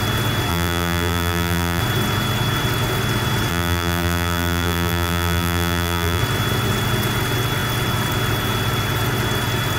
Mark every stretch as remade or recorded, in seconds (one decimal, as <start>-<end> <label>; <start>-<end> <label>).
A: 0.0-0.5 recorded; 0.5-1.8 remade; 1.8-3.5 recorded; 3.5-6.2 remade; 6.2-9.8 recorded